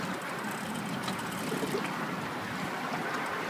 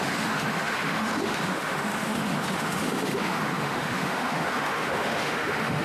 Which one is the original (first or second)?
first